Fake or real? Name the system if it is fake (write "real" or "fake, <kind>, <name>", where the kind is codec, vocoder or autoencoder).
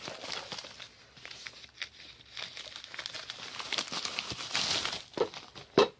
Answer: real